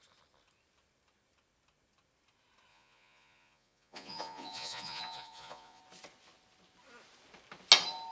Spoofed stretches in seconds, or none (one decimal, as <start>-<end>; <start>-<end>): 2.7-5.8

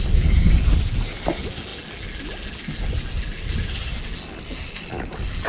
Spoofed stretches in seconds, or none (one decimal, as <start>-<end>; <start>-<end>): none